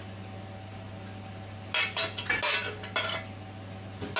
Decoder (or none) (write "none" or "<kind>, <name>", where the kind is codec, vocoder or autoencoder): none